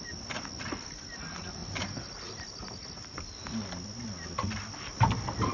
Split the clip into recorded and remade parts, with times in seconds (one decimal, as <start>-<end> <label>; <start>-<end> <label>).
0.0-5.5 recorded